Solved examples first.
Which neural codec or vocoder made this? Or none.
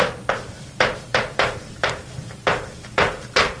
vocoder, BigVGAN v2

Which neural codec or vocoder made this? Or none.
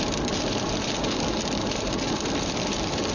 vocoder, BigVGAN v2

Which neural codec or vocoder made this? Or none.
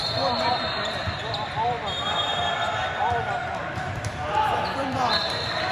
vocoder, BigVGAN v2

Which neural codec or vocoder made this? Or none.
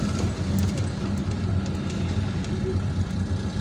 none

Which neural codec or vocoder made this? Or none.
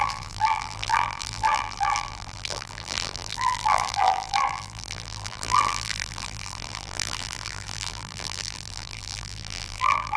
vocoder, BigVGAN v2